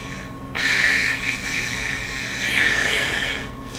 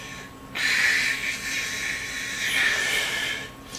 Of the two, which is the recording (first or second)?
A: second